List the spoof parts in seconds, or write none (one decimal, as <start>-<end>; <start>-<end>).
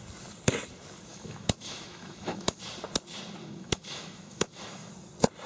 1.1-2.6; 3.4-4.9